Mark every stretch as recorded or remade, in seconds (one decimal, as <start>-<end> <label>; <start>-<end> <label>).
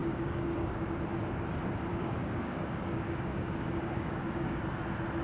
0.0-1.0 remade; 1.0-1.9 recorded; 1.9-4.6 remade; 4.6-5.2 recorded